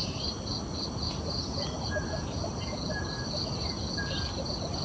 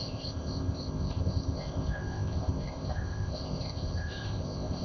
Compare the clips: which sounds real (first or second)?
first